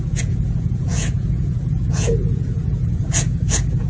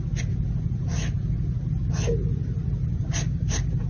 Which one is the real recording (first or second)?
second